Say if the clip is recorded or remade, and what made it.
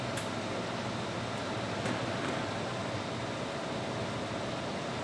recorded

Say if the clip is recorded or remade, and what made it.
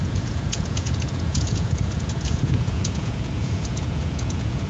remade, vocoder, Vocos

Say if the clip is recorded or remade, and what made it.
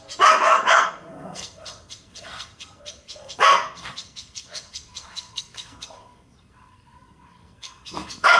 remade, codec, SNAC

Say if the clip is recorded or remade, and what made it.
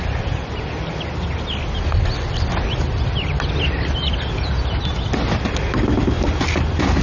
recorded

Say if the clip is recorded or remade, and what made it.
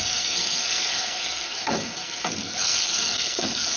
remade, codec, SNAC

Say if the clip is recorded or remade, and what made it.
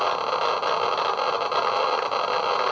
recorded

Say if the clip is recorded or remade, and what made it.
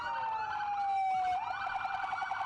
recorded